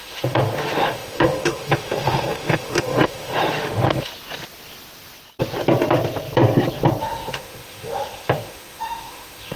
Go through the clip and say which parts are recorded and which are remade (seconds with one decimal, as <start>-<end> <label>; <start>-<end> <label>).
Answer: 0.0-4.1 remade; 4.1-7.0 recorded; 7.0-9.6 remade